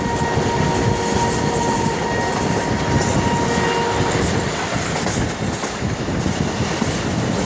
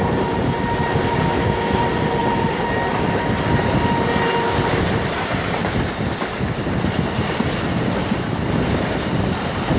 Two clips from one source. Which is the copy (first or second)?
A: second